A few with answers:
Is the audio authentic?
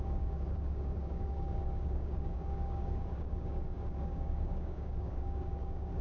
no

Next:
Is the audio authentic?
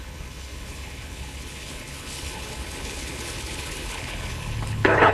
no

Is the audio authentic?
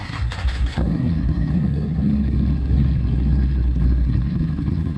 no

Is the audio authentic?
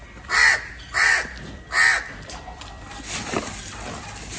yes